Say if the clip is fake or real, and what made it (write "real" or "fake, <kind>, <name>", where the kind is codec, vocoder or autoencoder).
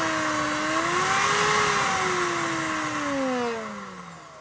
real